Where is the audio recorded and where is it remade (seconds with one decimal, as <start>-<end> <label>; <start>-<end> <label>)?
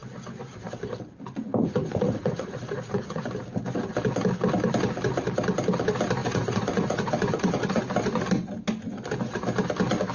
0.0-1.6 recorded; 1.6-3.3 remade; 3.3-6.2 recorded; 6.2-7.8 remade; 7.8-10.1 recorded